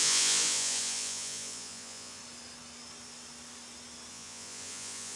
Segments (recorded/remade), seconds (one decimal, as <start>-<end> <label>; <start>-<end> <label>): 0.0-2.2 remade; 2.2-4.1 recorded; 4.1-5.2 remade